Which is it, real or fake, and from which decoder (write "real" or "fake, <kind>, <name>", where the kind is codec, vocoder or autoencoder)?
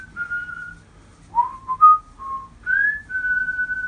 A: real